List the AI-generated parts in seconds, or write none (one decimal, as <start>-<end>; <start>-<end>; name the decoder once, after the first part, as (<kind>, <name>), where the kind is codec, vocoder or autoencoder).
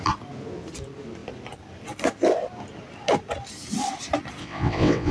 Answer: 4.4-5.1 (vocoder, WaveNeXt)